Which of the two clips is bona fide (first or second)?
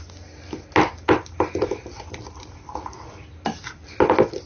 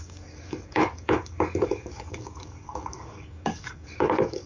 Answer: first